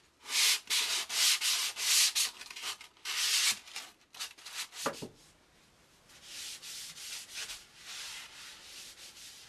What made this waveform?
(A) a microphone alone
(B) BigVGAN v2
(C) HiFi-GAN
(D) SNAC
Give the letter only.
A